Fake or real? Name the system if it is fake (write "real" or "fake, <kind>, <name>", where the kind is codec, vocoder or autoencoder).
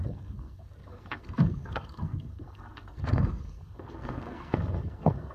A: fake, codec, SNAC